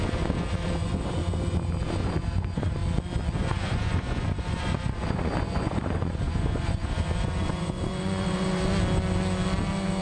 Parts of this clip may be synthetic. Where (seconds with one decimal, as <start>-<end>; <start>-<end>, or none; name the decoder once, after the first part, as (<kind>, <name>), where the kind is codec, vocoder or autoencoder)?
0.0-1.2 (vocoder, Vocos); 1.8-2.8; 3.4-8.7